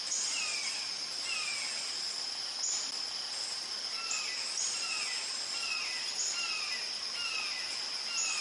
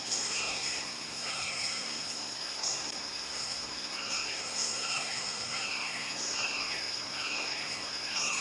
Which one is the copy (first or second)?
second